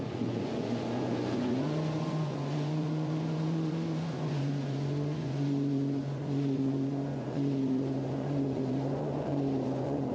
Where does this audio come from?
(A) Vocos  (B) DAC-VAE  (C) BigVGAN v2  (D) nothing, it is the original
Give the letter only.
A